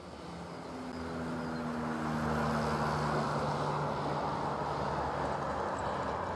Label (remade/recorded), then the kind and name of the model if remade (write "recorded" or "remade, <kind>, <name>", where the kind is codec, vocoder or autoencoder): recorded